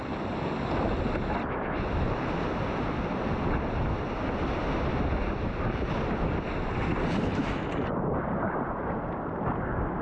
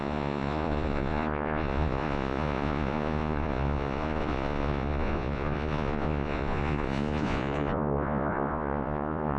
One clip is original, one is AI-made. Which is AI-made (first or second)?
second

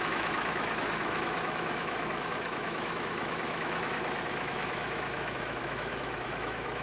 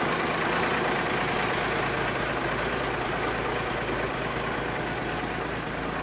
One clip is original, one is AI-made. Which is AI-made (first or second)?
first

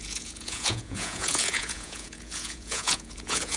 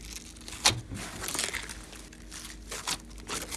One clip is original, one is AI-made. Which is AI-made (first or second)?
first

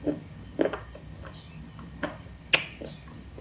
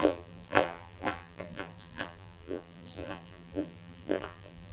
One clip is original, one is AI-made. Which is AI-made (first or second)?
second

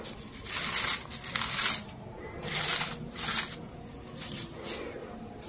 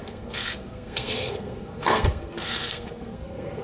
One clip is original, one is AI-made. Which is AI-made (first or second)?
second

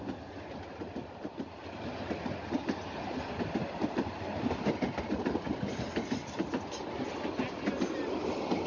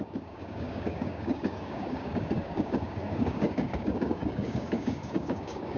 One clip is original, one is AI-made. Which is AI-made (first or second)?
second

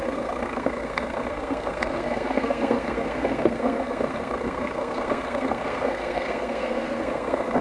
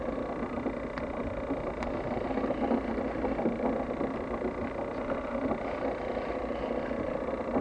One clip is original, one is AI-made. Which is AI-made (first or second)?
first